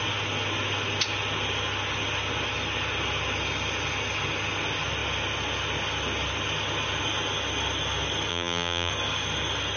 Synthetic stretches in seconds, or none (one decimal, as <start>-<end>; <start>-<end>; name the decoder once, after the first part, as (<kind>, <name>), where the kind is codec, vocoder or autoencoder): 8.3-8.9 (vocoder, BigVGAN v2)